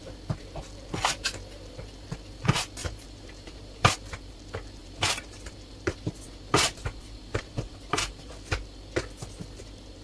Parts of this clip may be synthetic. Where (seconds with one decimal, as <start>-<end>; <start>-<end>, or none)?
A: 2.8-4.1; 4.8-8.3